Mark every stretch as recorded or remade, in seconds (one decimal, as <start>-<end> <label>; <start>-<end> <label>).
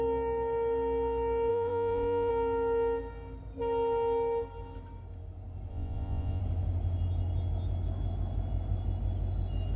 0.0-1.5 recorded; 1.5-2.3 remade; 2.3-5.7 recorded; 5.7-6.4 remade; 6.4-9.8 recorded